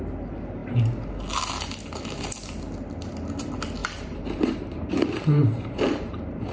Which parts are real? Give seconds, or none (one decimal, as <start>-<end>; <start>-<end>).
0.0-3.8